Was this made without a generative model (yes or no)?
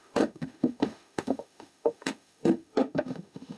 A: no